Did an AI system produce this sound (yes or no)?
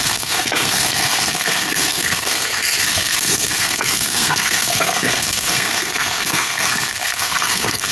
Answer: yes